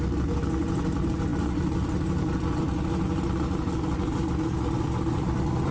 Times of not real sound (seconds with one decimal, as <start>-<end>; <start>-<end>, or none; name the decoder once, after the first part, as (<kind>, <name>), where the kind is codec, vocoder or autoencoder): none